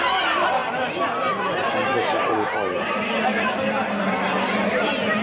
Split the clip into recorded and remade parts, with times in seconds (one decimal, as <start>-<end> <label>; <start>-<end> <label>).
0.0-5.2 recorded